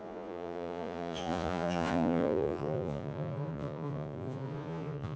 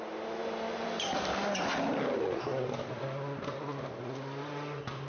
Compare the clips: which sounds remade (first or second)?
first